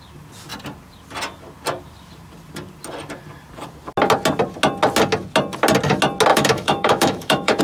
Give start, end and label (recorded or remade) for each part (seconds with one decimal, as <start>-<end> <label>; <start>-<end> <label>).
0.0-6.3 recorded; 6.3-7.6 remade